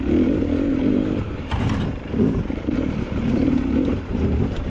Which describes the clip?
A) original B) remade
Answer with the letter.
B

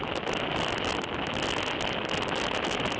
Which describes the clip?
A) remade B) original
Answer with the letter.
B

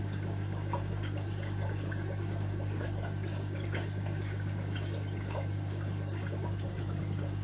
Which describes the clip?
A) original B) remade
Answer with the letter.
B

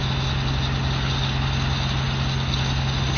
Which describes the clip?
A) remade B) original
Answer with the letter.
B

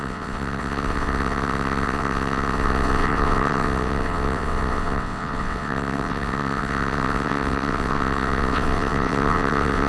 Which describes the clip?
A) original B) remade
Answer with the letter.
B